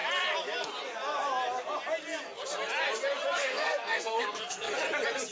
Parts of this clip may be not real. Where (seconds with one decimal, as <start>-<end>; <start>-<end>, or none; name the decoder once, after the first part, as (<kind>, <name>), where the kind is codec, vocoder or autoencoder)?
3.4-4.7 (codec, SNAC)